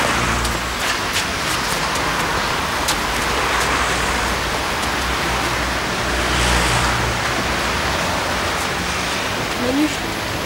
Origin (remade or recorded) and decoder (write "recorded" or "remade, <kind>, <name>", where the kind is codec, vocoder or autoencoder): recorded